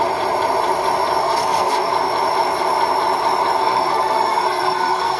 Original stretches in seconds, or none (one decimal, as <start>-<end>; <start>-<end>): 0.0-1.2; 1.9-3.6